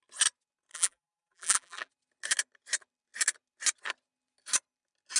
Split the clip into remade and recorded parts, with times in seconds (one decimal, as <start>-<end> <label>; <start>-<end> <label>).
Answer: 0.0-0.7 recorded; 0.7-1.9 remade; 1.9-5.2 recorded